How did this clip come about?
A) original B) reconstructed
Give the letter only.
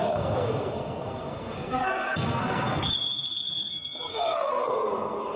B